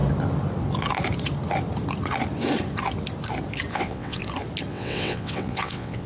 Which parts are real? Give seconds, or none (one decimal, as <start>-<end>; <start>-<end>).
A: 0.0-3.7; 4.2-4.7